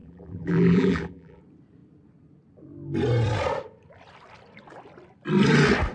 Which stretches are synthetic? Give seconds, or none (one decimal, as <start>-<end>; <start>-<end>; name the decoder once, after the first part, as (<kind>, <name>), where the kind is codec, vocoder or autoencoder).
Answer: 0.0-1.4 (vocoder, BigVGAN v2)